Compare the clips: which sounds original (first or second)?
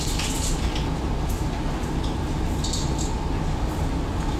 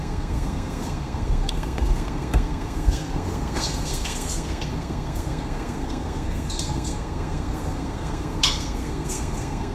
first